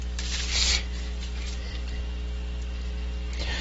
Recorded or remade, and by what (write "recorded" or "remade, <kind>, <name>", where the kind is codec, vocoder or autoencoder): recorded